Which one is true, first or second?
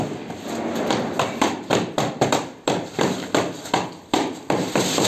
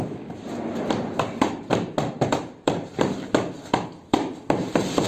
first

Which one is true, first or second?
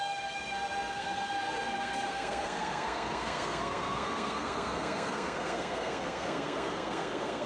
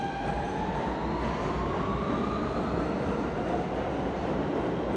second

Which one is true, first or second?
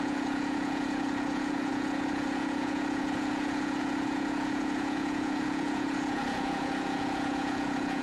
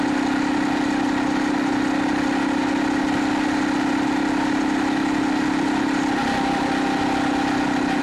second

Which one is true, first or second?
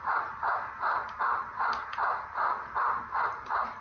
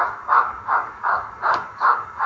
first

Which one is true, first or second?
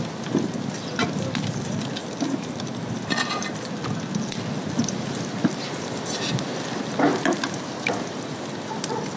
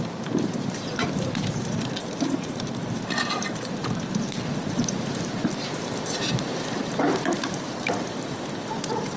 first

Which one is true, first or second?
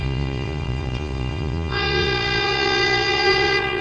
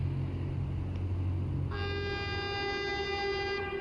second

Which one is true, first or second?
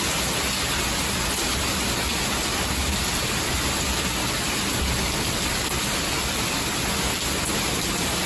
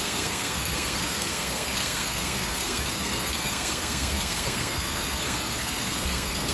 first